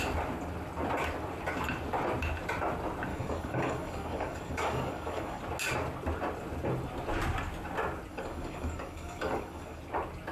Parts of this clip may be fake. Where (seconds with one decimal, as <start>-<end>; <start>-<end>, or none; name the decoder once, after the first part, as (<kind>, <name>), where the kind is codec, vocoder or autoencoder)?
3.1-5.4 (codec, DAC); 8.1-9.8